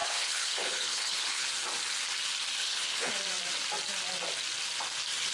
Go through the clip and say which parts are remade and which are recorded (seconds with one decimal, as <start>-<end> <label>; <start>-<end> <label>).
0.0-1.5 remade; 1.5-2.6 recorded; 2.6-3.1 remade; 3.1-5.3 recorded